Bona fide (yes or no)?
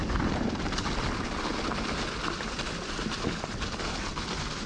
yes